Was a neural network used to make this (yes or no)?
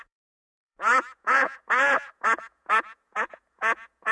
yes